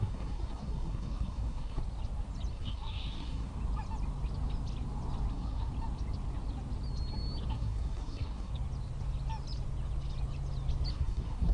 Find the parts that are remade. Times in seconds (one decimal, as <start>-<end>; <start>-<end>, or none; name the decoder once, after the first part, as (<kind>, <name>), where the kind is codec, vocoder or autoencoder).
0.0-1.8 (codec, SNAC); 2.5-3.5; 5.3-5.7; 7.5-8.5; 10.9-11.5